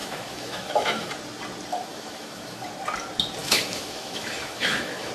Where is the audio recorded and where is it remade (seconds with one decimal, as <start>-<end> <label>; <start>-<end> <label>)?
0.0-1.1 remade; 1.1-1.7 recorded; 1.7-2.7 remade; 2.7-3.4 recorded; 3.4-5.1 remade